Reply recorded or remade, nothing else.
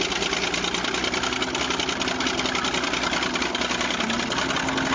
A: recorded